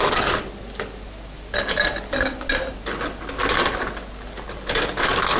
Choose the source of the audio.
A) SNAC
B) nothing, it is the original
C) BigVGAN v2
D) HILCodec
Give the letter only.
B